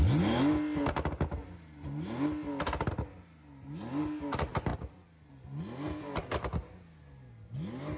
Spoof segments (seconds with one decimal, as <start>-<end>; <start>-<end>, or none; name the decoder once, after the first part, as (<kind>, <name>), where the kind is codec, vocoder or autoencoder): none